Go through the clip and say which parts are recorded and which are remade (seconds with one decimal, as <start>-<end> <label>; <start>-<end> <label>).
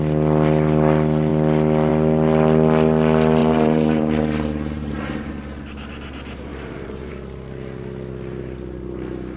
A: 0.0-3.4 recorded; 3.4-5.3 remade; 5.3-6.5 recorded; 6.5-7.1 remade; 7.1-9.4 recorded